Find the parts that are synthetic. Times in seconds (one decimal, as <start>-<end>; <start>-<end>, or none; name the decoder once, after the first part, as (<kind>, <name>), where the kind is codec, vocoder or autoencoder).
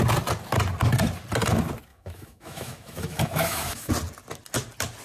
1.9-3.9 (autoencoder, DAC-VAE)